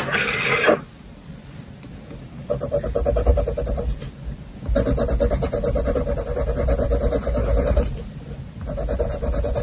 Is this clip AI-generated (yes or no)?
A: no